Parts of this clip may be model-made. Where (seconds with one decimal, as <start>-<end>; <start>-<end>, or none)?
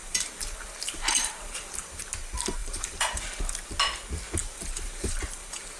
0.0-2.0; 2.6-3.2; 4.4-5.8